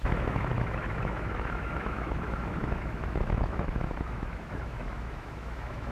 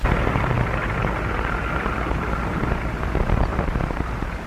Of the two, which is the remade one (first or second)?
first